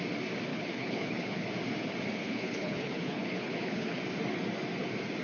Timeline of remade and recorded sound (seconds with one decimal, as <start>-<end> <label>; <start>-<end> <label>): 0.0-0.5 recorded; 0.5-1.5 remade; 1.5-2.2 recorded; 2.2-4.0 remade; 4.0-5.2 recorded